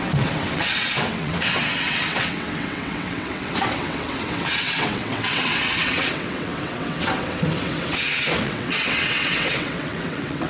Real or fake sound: fake